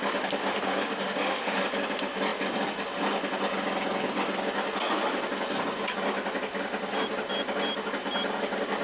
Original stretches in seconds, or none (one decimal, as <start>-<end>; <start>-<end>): 0.0-0.4; 1.6-8.8